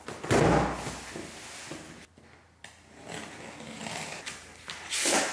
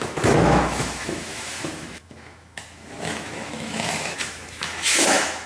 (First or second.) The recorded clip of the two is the first